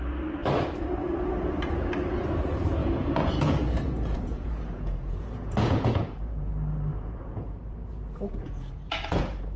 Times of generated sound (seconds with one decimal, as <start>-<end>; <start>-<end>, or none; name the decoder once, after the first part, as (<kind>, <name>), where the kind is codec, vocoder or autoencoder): 2.8-6.5 (vocoder, Vocos); 6.9-9.6

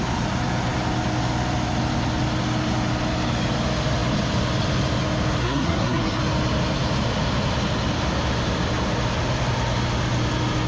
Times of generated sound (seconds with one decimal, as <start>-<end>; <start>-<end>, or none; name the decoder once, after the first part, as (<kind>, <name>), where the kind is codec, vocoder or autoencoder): 5.4-6.2 (codec, SNAC)

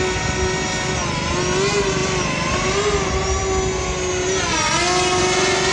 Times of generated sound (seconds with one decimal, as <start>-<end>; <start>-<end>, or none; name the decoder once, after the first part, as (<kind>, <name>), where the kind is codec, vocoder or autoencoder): none

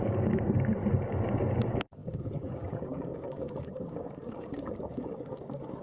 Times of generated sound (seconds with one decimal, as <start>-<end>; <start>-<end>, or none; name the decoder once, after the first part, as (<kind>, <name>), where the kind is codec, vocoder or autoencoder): 0.0-0.8 (codec, DAC); 1.6-5.8

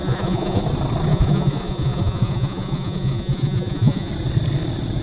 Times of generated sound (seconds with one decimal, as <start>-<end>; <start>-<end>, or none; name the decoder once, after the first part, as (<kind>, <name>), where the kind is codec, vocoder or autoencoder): 0.0-0.6 (vocoder, Vocos); 1.1-4.1

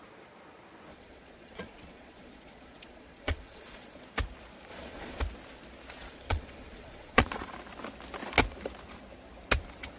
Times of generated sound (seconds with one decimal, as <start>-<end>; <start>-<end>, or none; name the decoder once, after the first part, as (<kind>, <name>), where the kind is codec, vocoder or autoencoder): 0.9-4.0 (vocoder, Vocos); 4.7-5.2; 6.0-7.5